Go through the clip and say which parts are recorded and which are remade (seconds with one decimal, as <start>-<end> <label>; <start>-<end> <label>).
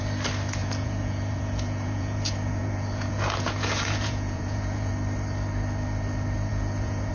0.0-0.6 recorded; 0.6-4.9 remade; 4.9-6.5 recorded; 6.5-7.1 remade